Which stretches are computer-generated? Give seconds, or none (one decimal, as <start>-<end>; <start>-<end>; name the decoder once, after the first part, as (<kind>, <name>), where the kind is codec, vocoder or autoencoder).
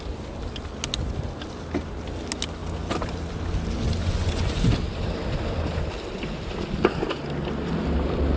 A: 4.0-4.7 (vocoder, Vocos)